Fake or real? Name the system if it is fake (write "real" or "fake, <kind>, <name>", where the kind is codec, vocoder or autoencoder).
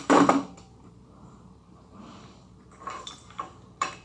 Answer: fake, vocoder, BigVGAN v2